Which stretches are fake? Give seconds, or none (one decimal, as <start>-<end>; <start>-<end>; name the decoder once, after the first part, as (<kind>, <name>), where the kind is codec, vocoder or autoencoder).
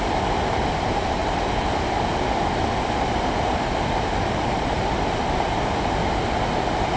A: none